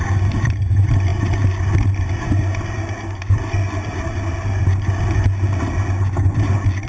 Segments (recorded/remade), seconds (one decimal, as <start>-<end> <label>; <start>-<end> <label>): 0.0-6.9 recorded

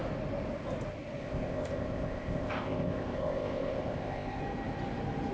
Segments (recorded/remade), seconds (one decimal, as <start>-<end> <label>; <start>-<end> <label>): 0.0-1.2 recorded; 1.2-4.4 remade; 4.4-5.3 recorded

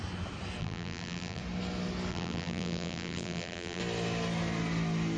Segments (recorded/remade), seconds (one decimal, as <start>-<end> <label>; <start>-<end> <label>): 0.0-0.6 recorded; 0.6-1.4 remade; 1.4-2.1 recorded; 2.1-3.8 remade; 3.8-5.2 recorded

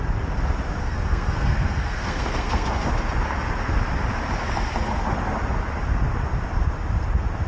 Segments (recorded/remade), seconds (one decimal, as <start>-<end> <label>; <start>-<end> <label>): 0.0-0.8 recorded; 0.8-2.9 remade; 2.9-7.5 recorded

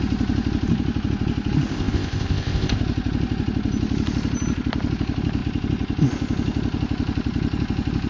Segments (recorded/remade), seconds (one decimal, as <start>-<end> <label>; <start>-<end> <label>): 0.0-1.7 recorded; 1.7-2.8 remade; 2.8-8.1 recorded

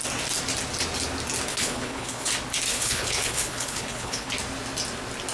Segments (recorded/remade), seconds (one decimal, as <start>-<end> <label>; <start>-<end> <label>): 0.0-1.5 recorded; 1.5-2.3 remade; 2.3-2.7 recorded; 2.7-4.3 remade; 4.3-5.3 recorded

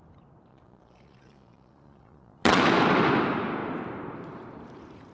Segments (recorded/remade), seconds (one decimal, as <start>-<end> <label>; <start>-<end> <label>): 0.0-0.5 recorded; 0.5-2.6 remade; 2.6-5.1 recorded

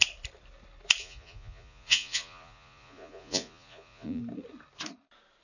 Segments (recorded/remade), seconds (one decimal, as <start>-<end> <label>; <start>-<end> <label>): 0.0-1.0 recorded; 1.0-4.2 remade; 4.2-5.4 recorded